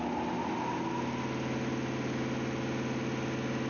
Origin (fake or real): real